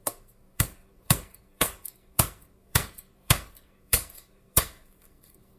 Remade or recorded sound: remade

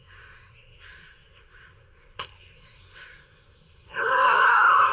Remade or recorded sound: remade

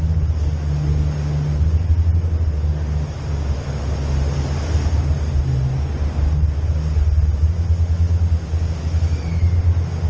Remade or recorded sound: recorded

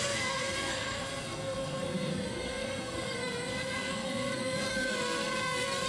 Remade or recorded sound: remade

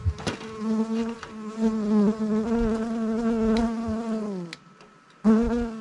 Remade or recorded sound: recorded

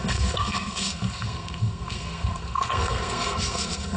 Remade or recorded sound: remade